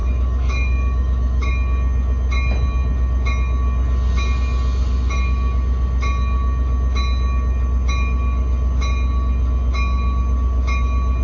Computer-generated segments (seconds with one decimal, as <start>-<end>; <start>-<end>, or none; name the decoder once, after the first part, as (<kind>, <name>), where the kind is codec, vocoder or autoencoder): 0.0-1.5 (autoencoder, DAC-VAE)